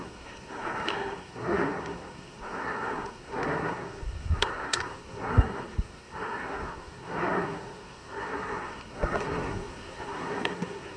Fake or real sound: fake